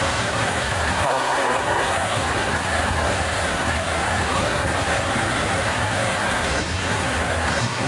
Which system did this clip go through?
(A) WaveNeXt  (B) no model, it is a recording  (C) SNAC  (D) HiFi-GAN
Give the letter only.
C